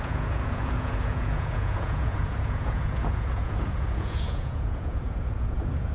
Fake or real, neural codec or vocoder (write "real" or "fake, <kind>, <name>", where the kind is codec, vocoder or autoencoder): fake, vocoder, Vocos